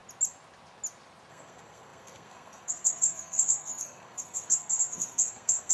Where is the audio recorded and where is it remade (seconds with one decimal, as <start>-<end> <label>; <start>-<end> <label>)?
0.0-1.3 recorded; 1.3-5.7 remade